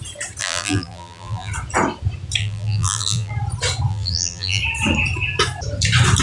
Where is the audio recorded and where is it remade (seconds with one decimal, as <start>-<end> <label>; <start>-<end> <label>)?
0.0-0.4 recorded; 0.4-1.5 remade; 1.5-2.4 recorded; 2.4-3.3 remade; 3.3-3.9 recorded; 3.9-4.6 remade; 4.6-6.2 recorded

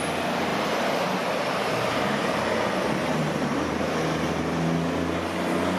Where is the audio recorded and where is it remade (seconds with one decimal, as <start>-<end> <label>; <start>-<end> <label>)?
0.0-0.5 recorded; 0.5-1.7 remade; 1.7-3.1 recorded; 3.1-4.2 remade; 4.2-5.8 recorded

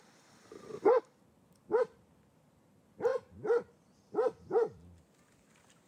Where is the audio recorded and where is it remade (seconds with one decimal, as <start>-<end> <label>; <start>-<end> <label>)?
0.0-0.7 remade; 0.7-1.8 recorded; 1.8-5.9 remade

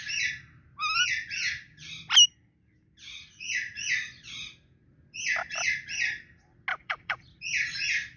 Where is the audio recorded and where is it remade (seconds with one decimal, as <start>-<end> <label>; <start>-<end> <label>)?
0.0-3.1 recorded; 3.1-3.9 remade; 3.9-6.7 recorded; 6.7-7.4 remade; 7.4-8.2 recorded

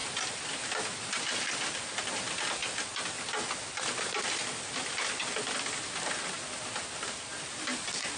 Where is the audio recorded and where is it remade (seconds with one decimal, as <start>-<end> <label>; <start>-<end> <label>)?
0.0-8.2 recorded

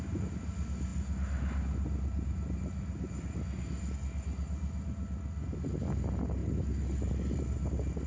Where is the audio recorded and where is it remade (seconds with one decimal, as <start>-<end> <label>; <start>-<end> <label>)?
0.0-8.1 recorded

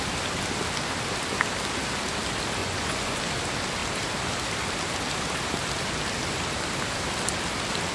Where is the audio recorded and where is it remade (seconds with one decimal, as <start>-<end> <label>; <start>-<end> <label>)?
0.0-2.6 recorded; 2.6-3.2 remade; 3.2-7.9 recorded